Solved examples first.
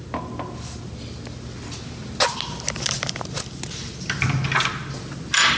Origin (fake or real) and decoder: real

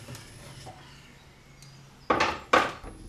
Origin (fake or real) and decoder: real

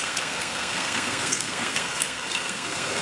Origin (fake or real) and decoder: fake, codec, SNAC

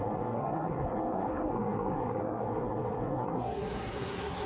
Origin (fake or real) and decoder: fake, codec, SNAC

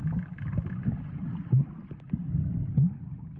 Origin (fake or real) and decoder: real